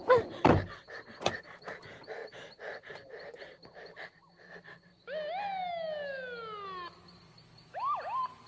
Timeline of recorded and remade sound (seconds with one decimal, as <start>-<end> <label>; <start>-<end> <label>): 0.0-8.5 recorded